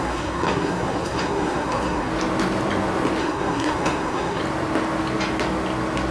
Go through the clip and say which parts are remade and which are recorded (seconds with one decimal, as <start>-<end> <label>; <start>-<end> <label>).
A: 0.0-2.1 remade; 2.1-3.2 recorded; 3.2-4.4 remade; 4.4-6.1 recorded